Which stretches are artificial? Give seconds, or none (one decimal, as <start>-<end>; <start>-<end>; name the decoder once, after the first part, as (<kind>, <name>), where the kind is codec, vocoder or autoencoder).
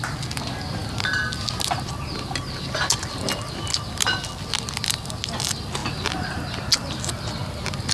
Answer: none